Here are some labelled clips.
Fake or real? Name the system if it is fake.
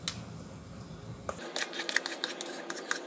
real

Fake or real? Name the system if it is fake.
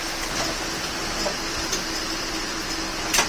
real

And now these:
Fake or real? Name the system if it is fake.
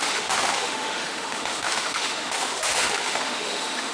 fake, autoencoder, DAC-VAE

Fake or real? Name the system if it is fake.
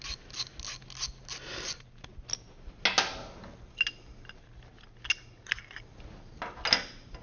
real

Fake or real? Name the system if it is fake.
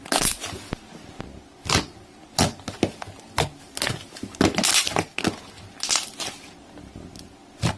real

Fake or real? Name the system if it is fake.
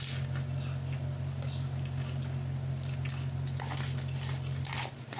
real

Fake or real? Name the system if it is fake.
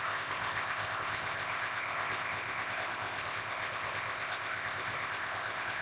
fake, codec, ZipCodec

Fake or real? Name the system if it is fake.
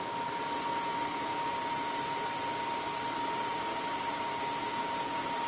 real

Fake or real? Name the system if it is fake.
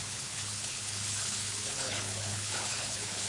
fake, codec, HILCodec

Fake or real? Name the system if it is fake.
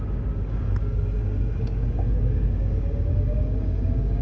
fake, codec, DAC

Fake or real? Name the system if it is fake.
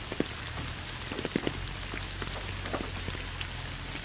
real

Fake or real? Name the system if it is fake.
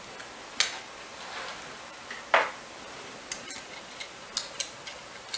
real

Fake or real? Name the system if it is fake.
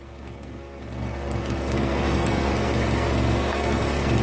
fake, codec, SNAC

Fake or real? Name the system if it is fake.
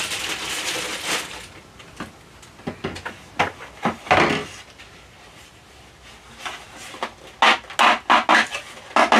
real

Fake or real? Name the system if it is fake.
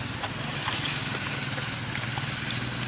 real